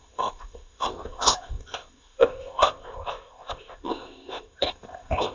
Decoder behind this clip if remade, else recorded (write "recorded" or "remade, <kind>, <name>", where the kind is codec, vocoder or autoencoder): remade, codec, ZipCodec